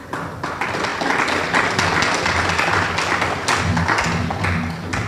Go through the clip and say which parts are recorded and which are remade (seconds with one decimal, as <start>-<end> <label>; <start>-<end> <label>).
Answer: 0.0-5.1 recorded